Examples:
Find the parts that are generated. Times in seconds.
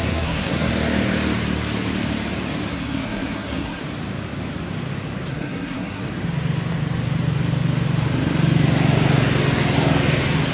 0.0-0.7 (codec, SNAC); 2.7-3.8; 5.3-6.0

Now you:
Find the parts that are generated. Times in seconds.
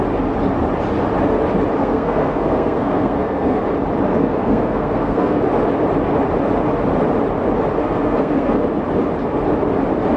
1.8-3.6 (codec, SNAC); 4.1-5.4; 7.8-8.8